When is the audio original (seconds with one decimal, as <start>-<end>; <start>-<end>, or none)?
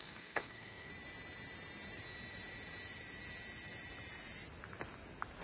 0.9-5.4